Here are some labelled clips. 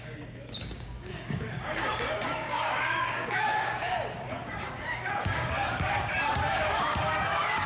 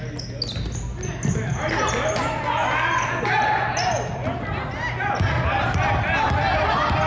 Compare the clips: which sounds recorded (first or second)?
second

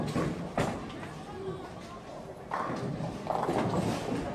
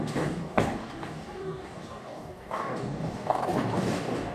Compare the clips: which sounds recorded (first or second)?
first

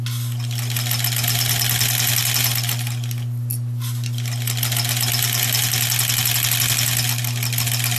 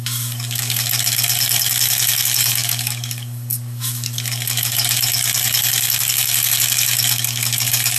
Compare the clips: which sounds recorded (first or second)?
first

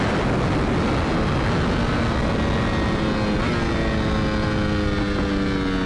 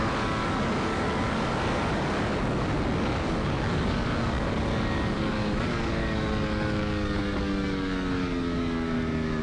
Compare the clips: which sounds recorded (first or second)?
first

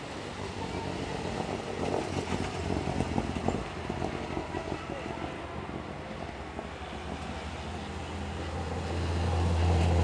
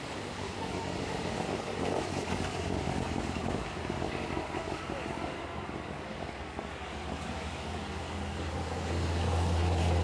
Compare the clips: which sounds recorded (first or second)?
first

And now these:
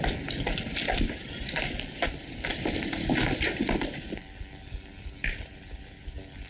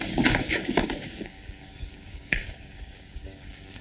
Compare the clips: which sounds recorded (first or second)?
first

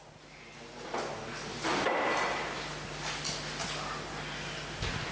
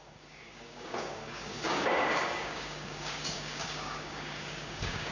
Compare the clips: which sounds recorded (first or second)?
first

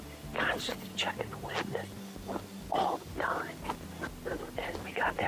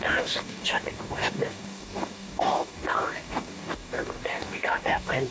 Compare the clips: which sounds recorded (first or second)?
first